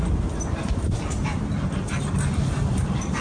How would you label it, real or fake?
fake